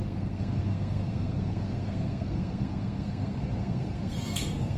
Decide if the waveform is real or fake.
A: fake